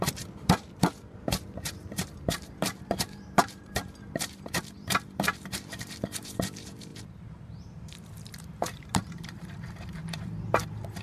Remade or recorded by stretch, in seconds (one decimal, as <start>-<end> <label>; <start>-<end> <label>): 0.0-11.0 remade